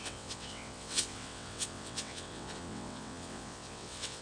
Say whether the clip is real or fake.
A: fake